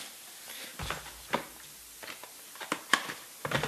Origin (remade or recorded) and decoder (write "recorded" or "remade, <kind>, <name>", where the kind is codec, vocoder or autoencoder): recorded